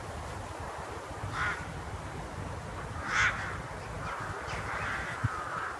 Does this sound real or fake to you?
fake